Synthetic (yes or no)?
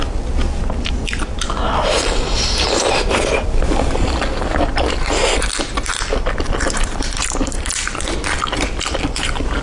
yes